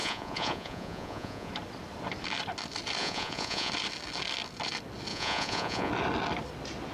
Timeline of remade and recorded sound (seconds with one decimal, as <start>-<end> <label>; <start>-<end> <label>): 0.0-1.5 remade; 1.5-3.0 recorded; 3.0-3.7 remade; 3.7-5.1 recorded; 5.1-5.9 remade; 5.9-6.9 recorded